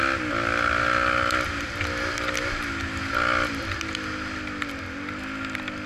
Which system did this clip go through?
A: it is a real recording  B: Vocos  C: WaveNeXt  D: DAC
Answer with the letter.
A